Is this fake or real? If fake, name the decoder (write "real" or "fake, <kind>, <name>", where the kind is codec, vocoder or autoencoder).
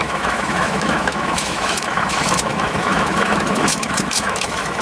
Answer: fake, autoencoder, DAC-VAE